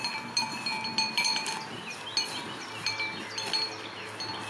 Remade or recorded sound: recorded